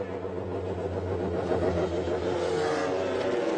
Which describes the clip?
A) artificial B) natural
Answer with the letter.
B